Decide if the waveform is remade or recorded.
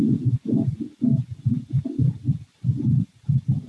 recorded